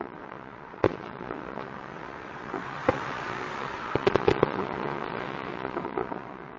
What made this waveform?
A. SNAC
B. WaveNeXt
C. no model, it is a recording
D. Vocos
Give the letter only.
B